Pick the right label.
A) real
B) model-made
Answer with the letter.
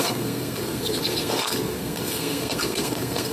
B